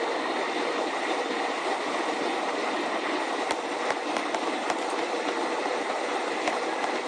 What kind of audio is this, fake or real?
fake